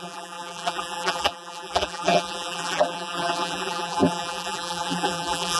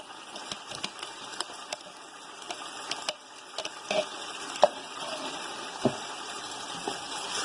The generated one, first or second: first